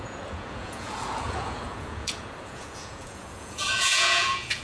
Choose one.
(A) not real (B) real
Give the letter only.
A